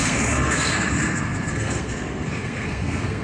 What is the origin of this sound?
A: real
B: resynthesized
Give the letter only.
B